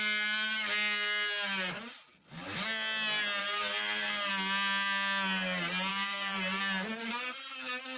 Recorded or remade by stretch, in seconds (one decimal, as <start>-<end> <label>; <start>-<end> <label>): 0.0-3.4 recorded; 3.4-4.3 remade; 4.3-5.9 recorded; 5.9-6.6 remade; 6.6-8.0 recorded